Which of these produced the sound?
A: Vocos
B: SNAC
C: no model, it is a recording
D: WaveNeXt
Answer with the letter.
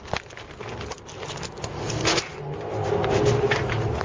C